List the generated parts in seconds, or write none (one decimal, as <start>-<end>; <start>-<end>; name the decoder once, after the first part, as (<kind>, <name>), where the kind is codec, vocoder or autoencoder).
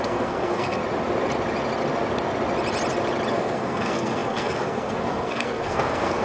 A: 0.0-0.8 (codec, SNAC); 3.3-6.2